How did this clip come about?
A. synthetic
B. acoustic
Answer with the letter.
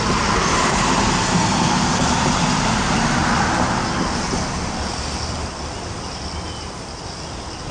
B